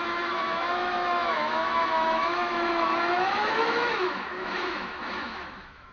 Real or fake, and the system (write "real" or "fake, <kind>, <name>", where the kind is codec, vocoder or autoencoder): fake, autoencoder, DAC-VAE